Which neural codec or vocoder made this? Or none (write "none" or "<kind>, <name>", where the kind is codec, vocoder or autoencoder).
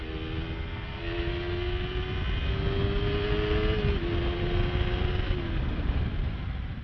none